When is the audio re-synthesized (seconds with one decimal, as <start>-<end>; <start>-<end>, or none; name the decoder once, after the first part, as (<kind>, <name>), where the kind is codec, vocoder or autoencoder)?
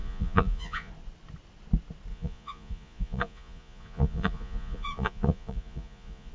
0.0-0.9 (vocoder, Vocos); 2.1-6.3